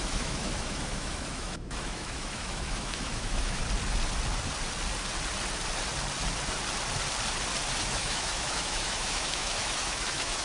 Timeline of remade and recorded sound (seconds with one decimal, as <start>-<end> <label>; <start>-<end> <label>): 0.0-3.6 remade; 3.6-7.8 recorded; 7.8-10.4 remade